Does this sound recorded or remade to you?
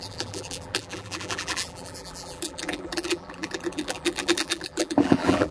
remade